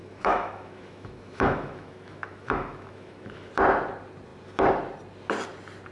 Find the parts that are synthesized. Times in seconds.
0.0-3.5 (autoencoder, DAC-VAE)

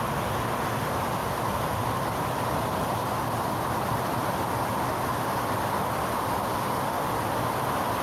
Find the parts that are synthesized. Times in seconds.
none